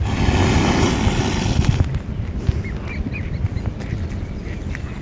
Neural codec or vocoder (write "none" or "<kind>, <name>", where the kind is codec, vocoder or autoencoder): none